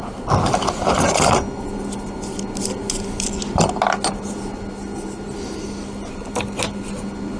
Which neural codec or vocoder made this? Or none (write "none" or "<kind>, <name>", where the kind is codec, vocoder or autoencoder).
none